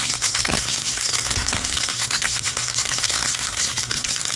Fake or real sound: fake